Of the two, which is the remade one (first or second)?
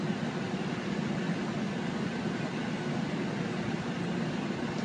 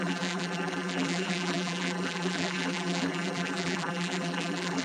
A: second